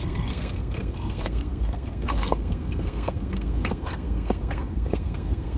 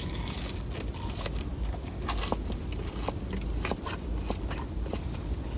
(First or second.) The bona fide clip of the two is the second